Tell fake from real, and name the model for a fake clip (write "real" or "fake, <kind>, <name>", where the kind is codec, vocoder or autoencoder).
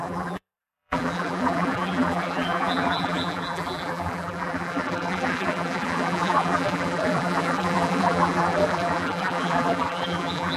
fake, vocoder, BigVGAN v2